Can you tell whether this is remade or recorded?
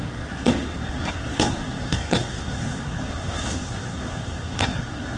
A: remade